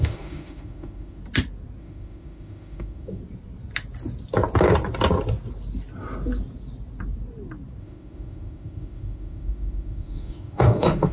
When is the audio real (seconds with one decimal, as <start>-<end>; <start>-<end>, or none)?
1.2-1.8; 3.2-7.8